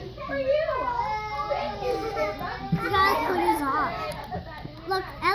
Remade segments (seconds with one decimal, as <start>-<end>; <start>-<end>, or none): none